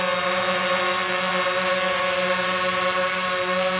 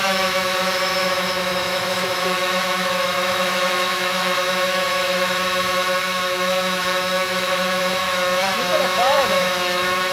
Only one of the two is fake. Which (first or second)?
second